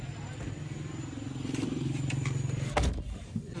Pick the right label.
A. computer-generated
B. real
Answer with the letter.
B